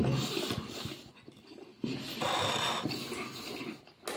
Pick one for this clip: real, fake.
real